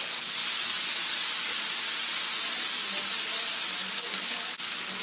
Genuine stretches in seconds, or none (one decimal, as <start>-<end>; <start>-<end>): 0.0-5.0